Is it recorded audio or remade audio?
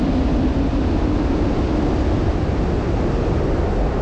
recorded